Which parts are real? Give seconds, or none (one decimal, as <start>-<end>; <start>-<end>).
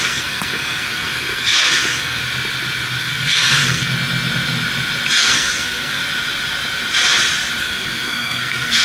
2.2-3.0; 3.9-5.2; 6.0-7.6